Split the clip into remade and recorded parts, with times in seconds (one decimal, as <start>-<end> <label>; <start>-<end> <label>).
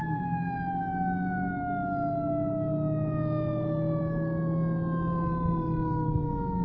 0.0-6.6 recorded